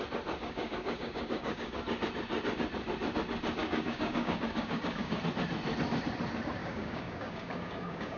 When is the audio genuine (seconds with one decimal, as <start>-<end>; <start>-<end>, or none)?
0.0-0.4; 1.8-3.6; 5.2-6.6